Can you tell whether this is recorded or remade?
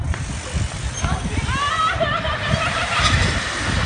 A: recorded